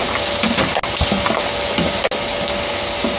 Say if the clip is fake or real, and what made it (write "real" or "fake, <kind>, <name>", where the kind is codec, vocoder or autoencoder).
real